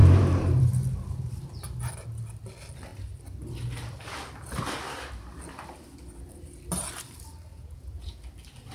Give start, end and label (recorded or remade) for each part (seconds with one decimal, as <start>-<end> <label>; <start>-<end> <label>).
0.0-7.5 recorded; 7.5-8.2 remade; 8.2-8.7 recorded